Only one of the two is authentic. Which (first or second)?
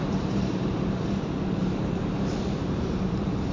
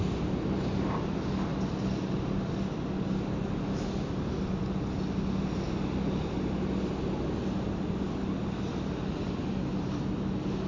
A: second